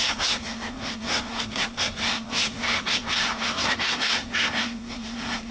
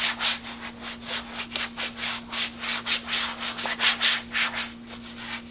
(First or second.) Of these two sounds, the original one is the second